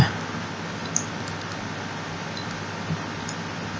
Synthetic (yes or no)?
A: no